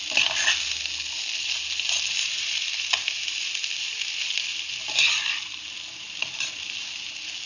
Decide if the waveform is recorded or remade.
recorded